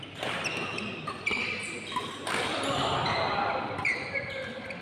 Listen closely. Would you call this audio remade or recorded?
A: remade